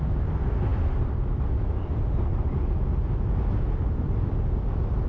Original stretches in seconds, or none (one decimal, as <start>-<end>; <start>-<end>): 0.0-5.1